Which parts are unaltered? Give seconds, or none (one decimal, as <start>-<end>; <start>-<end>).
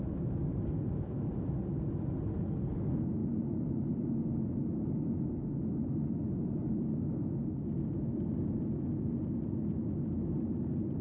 0.0-11.0